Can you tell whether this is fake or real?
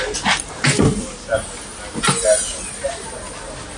real